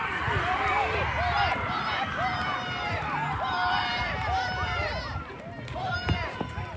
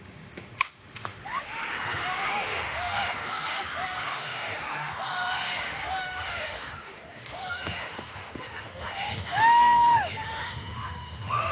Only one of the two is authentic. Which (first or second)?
first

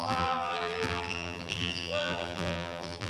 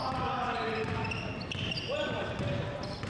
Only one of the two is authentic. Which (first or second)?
second